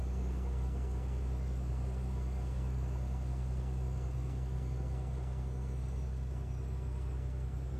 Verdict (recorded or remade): remade